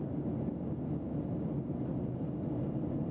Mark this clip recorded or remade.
recorded